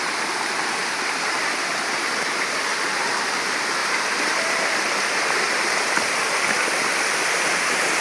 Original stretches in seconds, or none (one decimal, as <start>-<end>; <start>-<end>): 0.0-0.8; 2.8-3.8